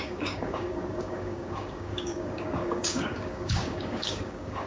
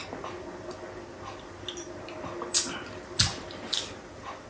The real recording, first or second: second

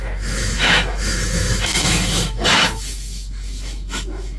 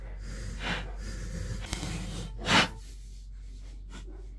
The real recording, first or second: second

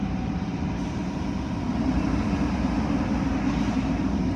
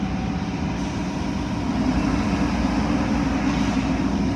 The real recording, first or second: second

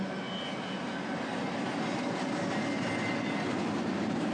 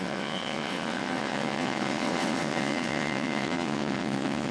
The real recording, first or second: first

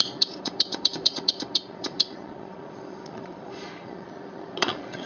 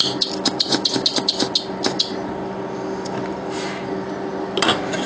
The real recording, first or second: second